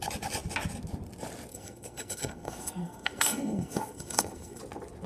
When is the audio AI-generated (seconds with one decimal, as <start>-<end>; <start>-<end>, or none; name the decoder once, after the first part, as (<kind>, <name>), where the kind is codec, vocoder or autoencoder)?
1.5-4.6 (codec, SNAC)